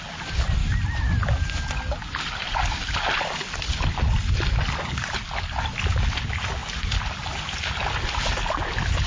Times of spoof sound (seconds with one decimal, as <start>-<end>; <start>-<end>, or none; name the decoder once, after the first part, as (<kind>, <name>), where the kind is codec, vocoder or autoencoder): none